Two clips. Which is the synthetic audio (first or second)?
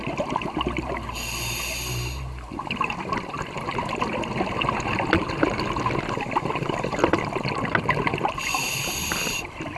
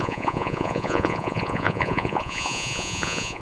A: second